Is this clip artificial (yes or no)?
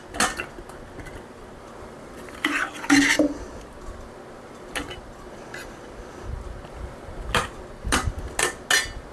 no